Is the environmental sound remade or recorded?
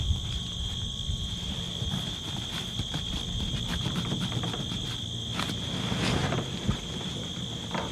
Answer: recorded